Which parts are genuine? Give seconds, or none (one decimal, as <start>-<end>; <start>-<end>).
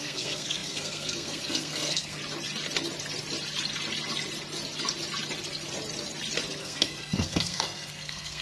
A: 2.2-6.6